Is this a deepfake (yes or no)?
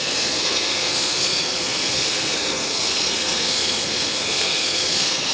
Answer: yes